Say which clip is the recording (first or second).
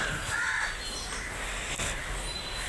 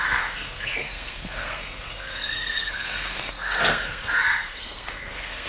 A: first